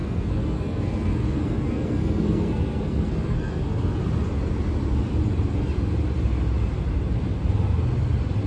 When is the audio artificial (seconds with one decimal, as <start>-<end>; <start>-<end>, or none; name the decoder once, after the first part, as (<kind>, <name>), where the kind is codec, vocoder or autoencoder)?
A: 0.0-4.0 (codec, SNAC)